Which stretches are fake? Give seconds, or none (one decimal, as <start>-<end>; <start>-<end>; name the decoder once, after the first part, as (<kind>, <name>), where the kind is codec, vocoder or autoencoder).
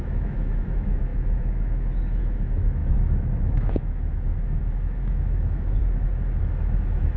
0.0-5.8 (autoencoder, DAC-VAE); 6.4-7.2